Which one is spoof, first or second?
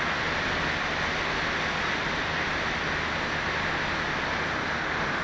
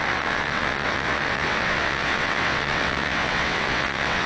second